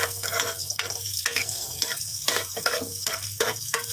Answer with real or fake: fake